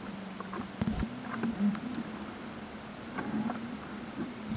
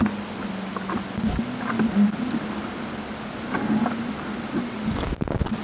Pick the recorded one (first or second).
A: second